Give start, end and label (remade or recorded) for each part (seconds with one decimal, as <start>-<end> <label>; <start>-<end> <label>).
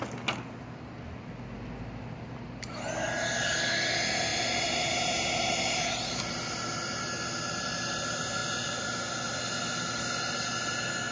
0.0-11.1 recorded